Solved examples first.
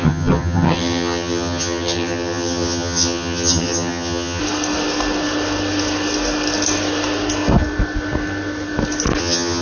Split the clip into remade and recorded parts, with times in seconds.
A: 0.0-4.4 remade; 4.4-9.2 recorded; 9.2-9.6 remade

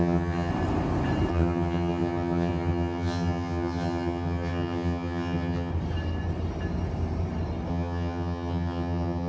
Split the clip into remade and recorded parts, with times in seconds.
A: 0.0-0.5 remade; 0.5-1.3 recorded; 1.3-5.7 remade; 5.7-7.7 recorded; 7.7-9.3 remade